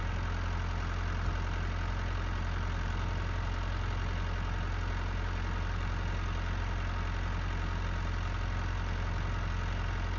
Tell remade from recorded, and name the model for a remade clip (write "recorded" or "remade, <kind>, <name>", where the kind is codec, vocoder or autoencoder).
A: recorded